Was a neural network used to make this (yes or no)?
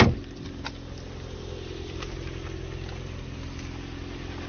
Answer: yes